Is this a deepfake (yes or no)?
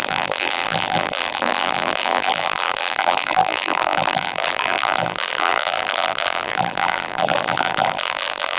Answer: yes